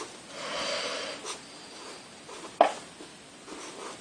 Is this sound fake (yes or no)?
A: no